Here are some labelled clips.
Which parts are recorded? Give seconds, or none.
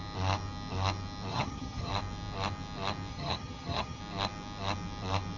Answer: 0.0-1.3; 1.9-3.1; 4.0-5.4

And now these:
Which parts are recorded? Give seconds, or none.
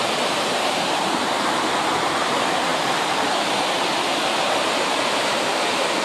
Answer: none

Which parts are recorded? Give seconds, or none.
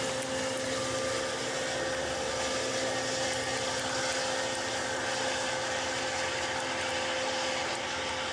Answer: 0.0-8.3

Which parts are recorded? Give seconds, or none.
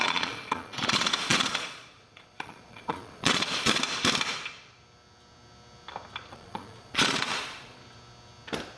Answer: 3.8-6.3; 7.8-8.8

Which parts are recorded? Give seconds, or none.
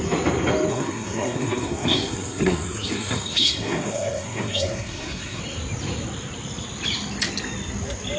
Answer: 0.0-0.7; 5.4-8.2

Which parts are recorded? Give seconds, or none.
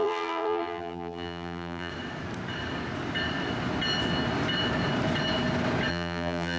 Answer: 1.9-5.9